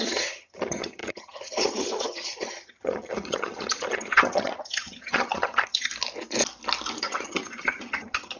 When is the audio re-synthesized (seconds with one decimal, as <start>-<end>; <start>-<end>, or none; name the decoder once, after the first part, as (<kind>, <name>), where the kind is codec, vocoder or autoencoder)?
0.0-5.9 (vocoder, HiFi-GAN); 7.0-8.4